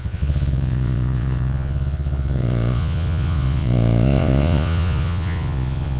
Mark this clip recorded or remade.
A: remade